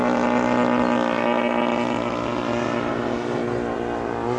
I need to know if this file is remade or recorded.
recorded